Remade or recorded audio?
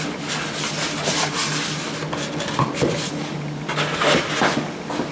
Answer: recorded